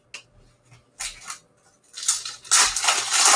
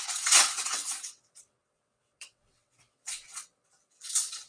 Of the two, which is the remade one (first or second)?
second